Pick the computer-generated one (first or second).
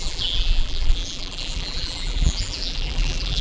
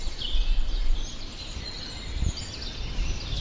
first